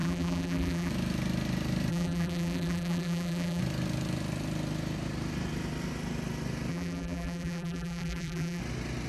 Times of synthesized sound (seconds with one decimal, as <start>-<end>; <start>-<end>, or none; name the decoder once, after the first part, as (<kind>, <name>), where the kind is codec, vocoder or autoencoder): 0.0-0.9 (vocoder, BigVGAN v2); 1.9-3.6; 6.7-8.6